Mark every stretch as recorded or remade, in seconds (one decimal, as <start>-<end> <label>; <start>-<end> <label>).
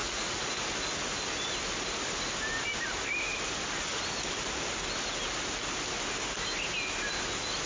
0.0-0.6 remade; 0.6-7.7 recorded